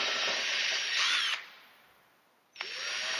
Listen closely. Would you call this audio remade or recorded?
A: recorded